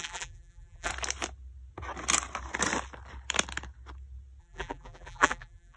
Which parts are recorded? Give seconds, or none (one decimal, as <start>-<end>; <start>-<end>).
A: 0.9-4.4